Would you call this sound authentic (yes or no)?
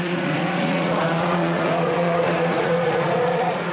no